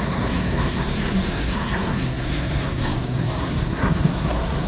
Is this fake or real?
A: fake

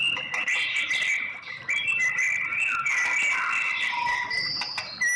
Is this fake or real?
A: real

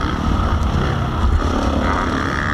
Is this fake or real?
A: real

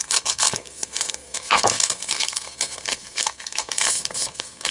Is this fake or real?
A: fake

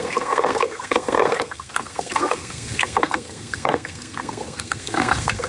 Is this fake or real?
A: fake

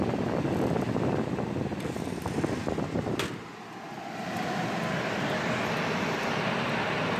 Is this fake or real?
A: real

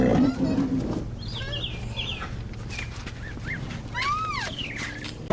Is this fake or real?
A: real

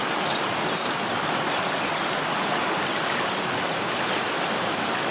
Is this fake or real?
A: real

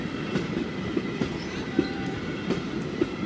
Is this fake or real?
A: real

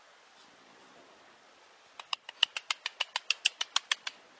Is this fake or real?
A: real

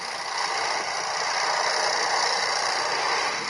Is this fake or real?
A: real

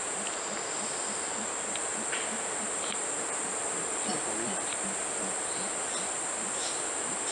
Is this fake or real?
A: real